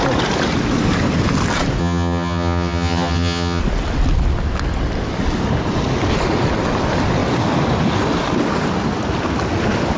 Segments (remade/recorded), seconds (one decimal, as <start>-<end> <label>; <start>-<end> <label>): 0.0-1.8 recorded; 1.8-3.6 remade; 3.6-10.0 recorded